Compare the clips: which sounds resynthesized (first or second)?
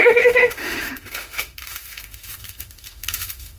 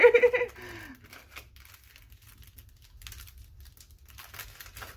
first